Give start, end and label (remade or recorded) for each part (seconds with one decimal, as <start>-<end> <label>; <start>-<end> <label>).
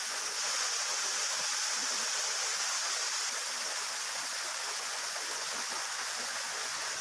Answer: 0.0-0.9 remade; 0.9-4.0 recorded; 4.0-7.0 remade